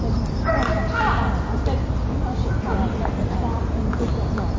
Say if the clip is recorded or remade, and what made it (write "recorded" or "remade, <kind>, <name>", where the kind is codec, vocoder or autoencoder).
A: recorded